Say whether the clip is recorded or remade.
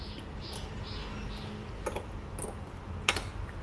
recorded